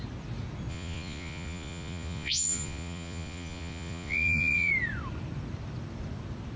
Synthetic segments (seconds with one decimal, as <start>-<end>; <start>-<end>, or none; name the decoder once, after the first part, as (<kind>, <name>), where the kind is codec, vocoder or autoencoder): 0.7-4.7 (vocoder, Vocos)